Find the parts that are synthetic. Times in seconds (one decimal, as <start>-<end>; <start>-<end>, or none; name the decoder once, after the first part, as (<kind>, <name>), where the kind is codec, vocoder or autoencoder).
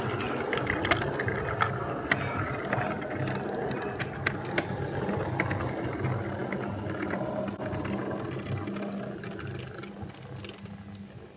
none